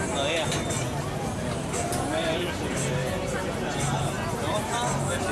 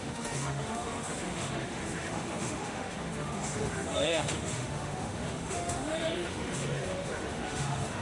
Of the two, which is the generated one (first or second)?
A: second